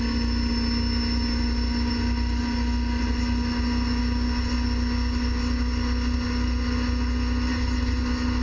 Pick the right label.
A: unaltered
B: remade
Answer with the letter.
A